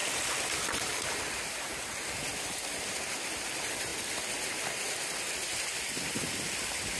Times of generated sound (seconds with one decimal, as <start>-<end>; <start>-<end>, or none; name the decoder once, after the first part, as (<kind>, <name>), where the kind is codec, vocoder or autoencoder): none